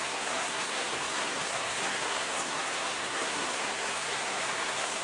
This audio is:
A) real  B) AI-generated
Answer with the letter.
B